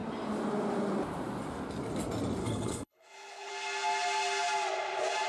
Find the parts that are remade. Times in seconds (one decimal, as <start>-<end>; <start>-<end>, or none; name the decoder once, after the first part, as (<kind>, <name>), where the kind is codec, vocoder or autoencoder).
2.4-3.5 (codec, HILCodec)